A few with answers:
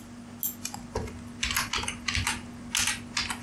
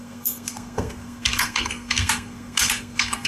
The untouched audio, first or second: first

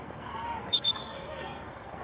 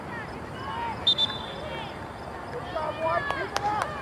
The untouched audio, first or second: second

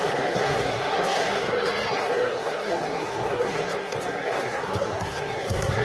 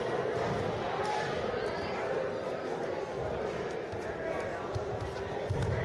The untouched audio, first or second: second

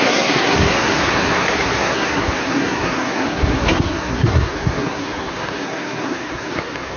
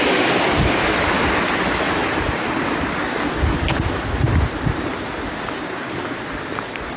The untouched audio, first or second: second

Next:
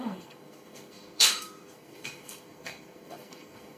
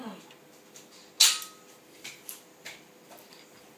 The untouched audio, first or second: second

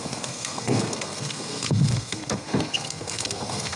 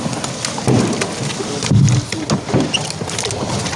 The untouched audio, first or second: second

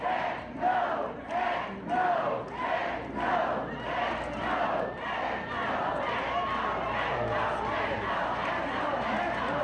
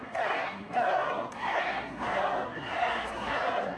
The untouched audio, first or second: first